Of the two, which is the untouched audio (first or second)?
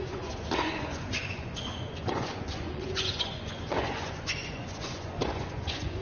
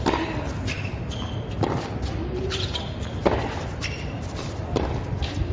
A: second